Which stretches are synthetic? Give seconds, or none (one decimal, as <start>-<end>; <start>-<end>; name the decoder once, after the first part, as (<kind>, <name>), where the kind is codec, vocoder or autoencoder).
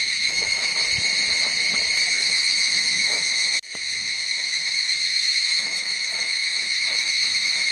0.0-0.7 (autoencoder, DAC-VAE); 2.1-7.7